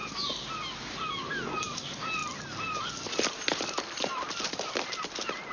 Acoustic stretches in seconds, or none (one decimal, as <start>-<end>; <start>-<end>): 0.0-0.9